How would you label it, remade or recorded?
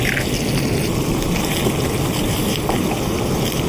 recorded